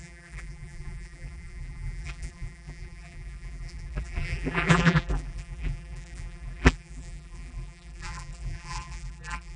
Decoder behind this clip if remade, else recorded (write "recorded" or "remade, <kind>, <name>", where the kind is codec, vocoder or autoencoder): remade, vocoder, BigVGAN v2